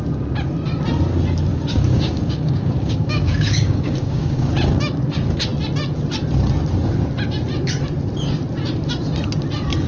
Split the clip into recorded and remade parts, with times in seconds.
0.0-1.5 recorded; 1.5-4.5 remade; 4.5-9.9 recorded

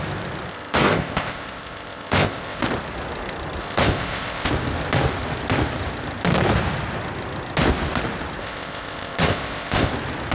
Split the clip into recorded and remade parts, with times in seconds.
0.0-0.5 recorded; 0.5-2.6 remade; 2.6-3.6 recorded; 3.6-4.5 remade; 4.5-8.4 recorded; 8.4-9.9 remade; 9.9-10.3 recorded

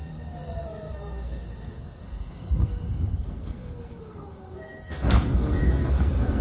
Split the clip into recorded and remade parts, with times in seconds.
0.0-6.4 remade

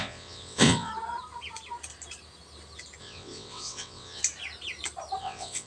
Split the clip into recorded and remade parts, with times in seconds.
0.0-0.9 remade; 0.9-3.0 recorded; 3.0-4.2 remade; 4.2-5.2 recorded; 5.2-5.7 remade

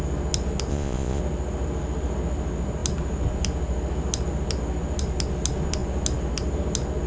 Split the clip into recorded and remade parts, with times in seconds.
0.0-0.7 recorded; 0.7-1.2 remade; 1.2-7.1 recorded